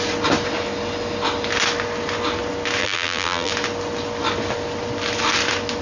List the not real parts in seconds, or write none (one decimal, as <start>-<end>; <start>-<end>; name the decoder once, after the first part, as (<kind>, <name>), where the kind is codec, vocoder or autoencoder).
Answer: 2.8-3.5 (vocoder, BigVGAN v2)